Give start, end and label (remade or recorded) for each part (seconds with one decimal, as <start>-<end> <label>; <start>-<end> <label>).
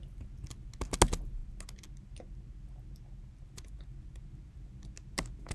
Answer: 0.0-5.5 recorded